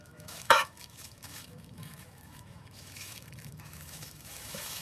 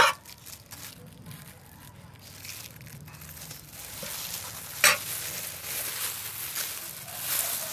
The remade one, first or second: first